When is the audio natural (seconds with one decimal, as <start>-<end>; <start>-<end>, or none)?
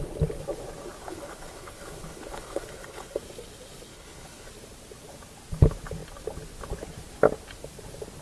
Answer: 0.0-1.0; 3.2-3.9; 4.5-8.2